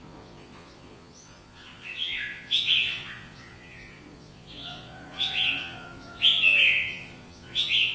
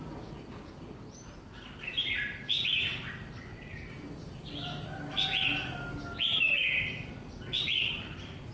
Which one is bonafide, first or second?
second